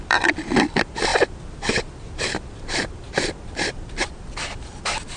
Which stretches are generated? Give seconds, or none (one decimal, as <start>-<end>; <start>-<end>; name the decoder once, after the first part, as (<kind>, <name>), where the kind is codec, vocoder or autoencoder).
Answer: none